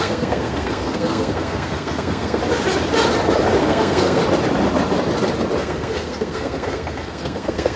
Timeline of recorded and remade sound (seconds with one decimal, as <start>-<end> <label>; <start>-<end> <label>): 0.0-2.4 remade; 2.4-3.6 recorded; 3.6-4.2 remade; 4.2-5.6 recorded; 5.6-7.8 remade